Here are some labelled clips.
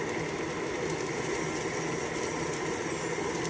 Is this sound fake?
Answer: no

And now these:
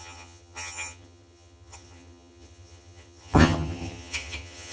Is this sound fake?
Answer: yes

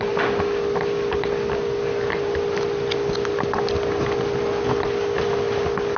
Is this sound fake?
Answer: no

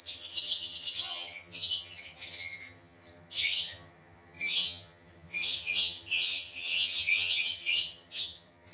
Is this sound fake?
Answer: yes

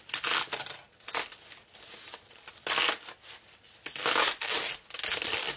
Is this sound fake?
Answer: no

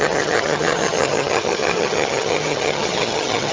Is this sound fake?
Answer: yes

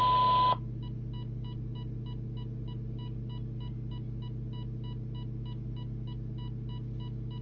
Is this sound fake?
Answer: no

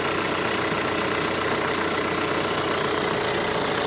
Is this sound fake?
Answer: no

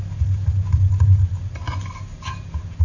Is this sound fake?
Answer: no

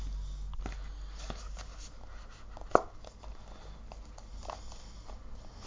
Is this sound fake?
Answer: no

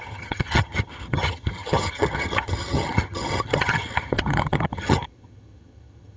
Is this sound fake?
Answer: yes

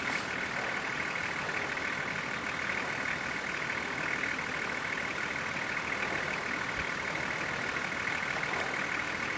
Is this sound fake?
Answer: no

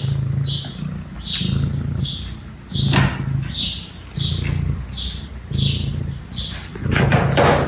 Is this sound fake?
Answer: no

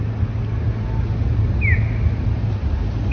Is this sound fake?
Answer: no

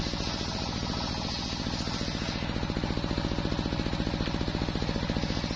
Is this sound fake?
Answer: no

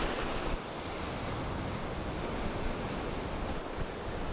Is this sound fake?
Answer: no